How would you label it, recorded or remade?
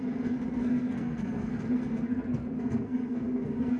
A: remade